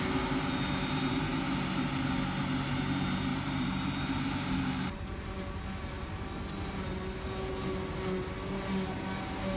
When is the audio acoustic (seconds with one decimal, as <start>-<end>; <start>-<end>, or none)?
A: 0.0-9.6